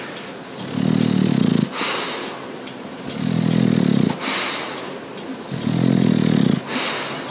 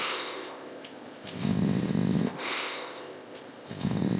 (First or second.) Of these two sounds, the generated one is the second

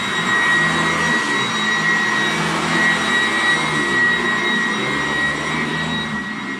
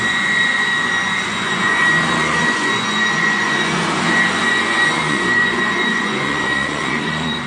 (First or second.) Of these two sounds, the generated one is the second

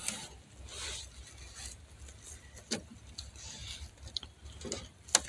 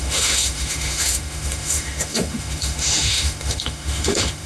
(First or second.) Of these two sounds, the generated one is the second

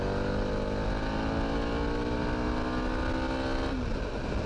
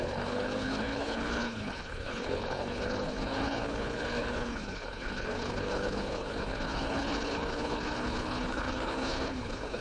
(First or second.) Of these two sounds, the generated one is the second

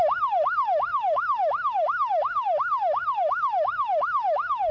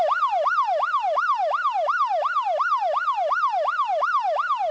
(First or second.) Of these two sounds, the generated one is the first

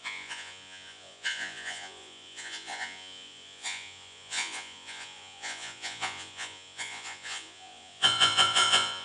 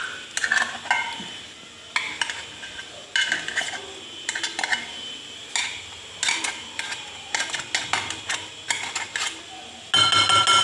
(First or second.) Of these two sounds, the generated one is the first